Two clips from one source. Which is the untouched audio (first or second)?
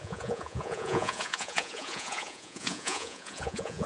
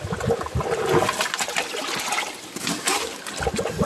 second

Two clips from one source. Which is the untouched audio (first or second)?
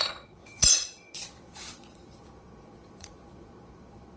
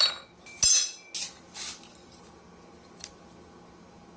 second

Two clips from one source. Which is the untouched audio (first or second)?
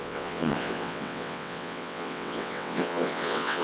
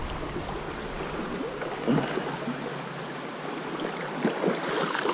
second